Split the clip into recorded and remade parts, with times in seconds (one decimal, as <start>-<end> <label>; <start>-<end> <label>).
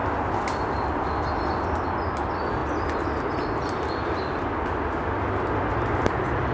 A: 0.0-6.5 recorded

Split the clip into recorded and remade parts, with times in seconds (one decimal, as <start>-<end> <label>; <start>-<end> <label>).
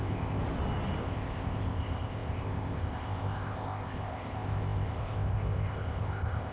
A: 0.0-0.4 remade; 0.4-1.0 recorded; 1.0-6.5 remade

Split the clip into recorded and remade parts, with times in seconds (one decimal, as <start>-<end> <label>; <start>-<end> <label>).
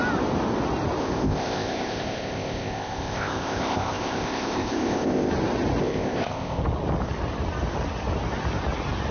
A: 0.0-1.0 recorded; 1.0-5.3 remade; 5.3-5.8 recorded; 5.8-6.6 remade; 6.6-9.1 recorded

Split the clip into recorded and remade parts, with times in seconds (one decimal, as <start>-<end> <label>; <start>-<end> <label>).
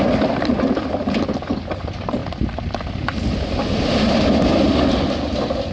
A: 0.0-5.7 recorded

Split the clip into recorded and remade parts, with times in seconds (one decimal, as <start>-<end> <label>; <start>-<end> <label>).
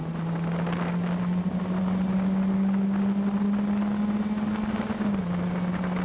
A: 0.0-6.0 recorded